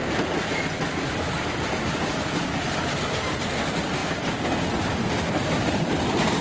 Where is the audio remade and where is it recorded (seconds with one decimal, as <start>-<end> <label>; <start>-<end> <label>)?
0.0-6.4 recorded